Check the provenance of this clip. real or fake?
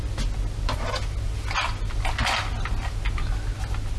real